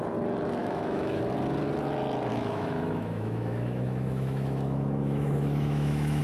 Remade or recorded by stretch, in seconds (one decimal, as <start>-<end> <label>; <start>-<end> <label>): 0.0-0.6 recorded; 0.6-1.2 remade; 1.2-2.3 recorded; 2.3-6.2 remade